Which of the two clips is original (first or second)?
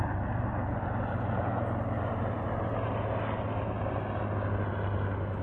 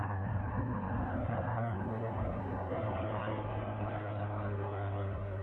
first